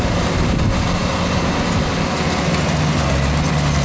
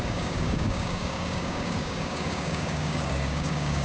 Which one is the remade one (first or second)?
second